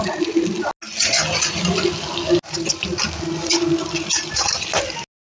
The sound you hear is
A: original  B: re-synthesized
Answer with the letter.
A